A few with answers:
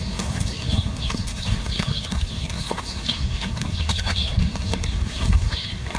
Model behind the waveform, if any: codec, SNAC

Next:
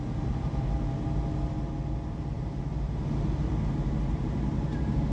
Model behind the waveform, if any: none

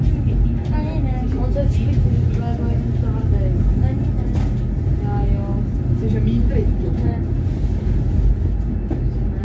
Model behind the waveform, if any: none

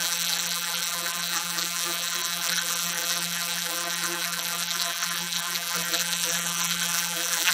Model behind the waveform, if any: vocoder, BigVGAN v2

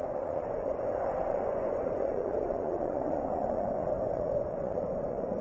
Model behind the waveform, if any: vocoder, Vocos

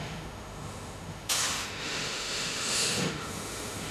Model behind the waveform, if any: autoencoder, DAC-VAE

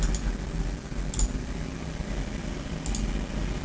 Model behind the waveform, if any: none